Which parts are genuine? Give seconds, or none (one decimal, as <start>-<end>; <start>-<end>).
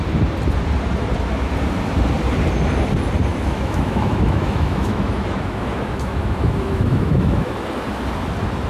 0.0-3.3; 7.5-8.7